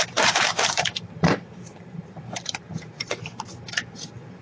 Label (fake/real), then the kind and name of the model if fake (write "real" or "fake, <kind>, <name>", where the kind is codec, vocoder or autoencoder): fake, vocoder, BigVGAN v2